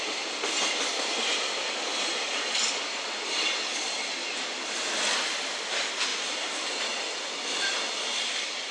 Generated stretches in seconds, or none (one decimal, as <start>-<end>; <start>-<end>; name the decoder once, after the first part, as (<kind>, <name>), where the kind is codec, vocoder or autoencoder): 4.2-4.9 (vocoder, BigVGAN v2)